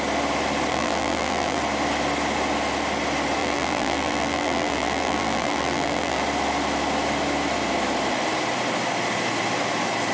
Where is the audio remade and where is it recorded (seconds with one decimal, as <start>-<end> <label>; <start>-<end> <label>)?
0.0-0.7 recorded; 0.7-1.6 remade; 1.6-3.4 recorded; 3.4-6.2 remade; 6.2-10.1 recorded

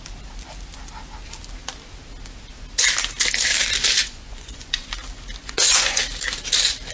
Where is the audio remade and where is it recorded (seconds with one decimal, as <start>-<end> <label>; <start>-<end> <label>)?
0.0-4.0 recorded; 4.0-4.9 remade; 4.9-5.4 recorded; 5.4-6.0 remade; 6.0-6.9 recorded

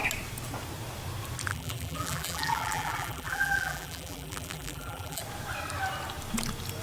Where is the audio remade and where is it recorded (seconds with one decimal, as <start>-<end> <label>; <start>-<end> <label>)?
0.0-1.5 recorded; 1.5-5.2 remade; 5.2-6.8 recorded

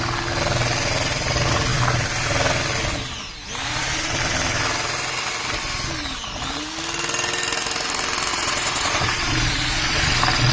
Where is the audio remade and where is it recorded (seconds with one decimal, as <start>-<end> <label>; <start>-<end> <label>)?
0.0-8.3 recorded; 8.3-10.1 remade; 10.1-10.5 recorded